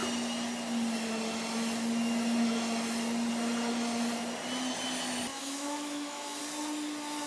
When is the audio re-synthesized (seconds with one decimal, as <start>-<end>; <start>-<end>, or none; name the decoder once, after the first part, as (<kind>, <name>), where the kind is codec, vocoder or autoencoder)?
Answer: 5.3-6.4 (autoencoder, DAC-VAE)